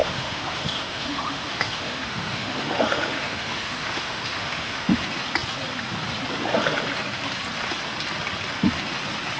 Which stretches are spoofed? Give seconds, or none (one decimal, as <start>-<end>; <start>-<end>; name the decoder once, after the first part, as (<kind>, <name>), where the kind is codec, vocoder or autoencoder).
0.0-5.0 (autoencoder, DAC-VAE)